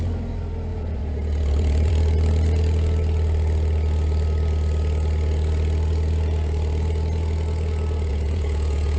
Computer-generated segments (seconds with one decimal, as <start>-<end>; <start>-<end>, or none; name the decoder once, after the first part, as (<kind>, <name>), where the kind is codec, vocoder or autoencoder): 0.7-1.9 (vocoder, Vocos); 8.1-9.0